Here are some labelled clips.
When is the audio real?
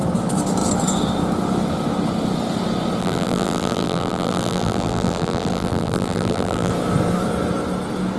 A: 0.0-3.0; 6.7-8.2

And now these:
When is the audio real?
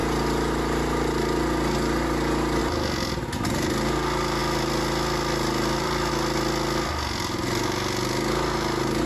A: 0.0-4.4; 6.1-9.1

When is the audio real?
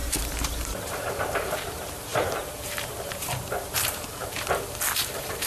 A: none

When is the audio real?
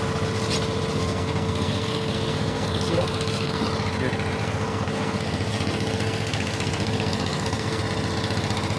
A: 0.0-0.9; 3.6-4.4; 7.8-8.8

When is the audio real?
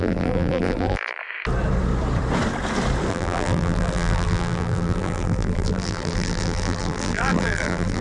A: 1.2-3.1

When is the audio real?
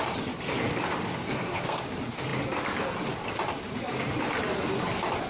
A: 0.0-1.1; 1.8-5.3